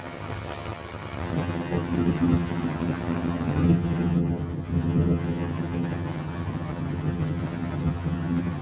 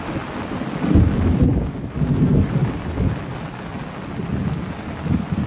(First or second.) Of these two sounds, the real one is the second